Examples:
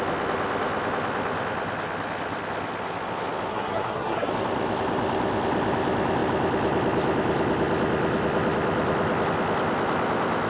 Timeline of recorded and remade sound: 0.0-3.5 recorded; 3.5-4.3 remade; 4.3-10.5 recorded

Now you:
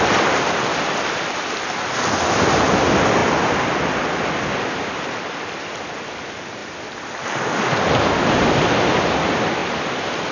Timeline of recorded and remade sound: 0.0-10.3 recorded

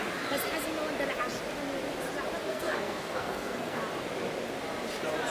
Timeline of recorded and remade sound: 0.0-2.5 recorded; 2.5-3.8 remade; 3.8-5.3 recorded

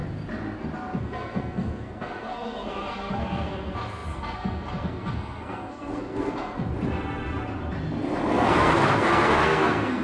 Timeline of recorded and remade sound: 0.0-1.0 recorded; 1.0-6.7 remade; 6.7-8.3 recorded; 8.3-10.0 remade

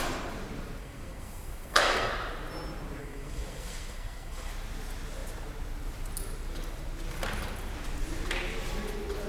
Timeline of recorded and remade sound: 0.0-0.8 recorded; 0.8-2.1 remade; 2.1-3.0 recorded; 3.0-4.5 remade; 4.5-9.3 recorded

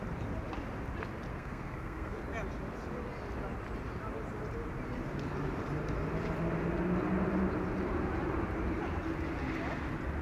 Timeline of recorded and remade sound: 0.0-1.3 recorded; 1.3-2.2 remade; 2.2-10.2 recorded